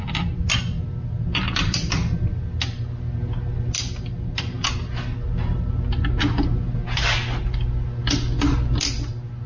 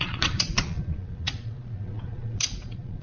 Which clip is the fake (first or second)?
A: second